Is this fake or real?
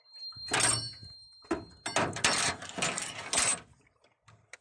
real